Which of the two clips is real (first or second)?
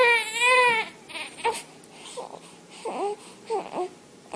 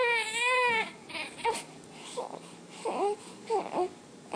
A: first